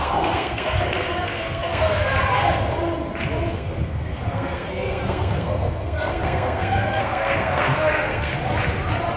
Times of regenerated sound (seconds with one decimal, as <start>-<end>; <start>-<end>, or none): 0.0-2.1; 3.5-8.3